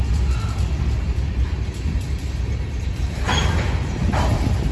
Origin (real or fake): real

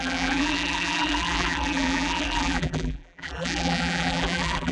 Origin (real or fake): fake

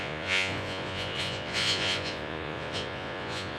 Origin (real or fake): fake